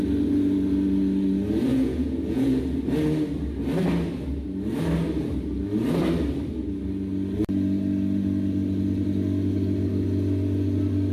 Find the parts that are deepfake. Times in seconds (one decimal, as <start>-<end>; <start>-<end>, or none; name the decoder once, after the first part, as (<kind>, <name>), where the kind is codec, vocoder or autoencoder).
1.7-2.6 (vocoder, Vocos)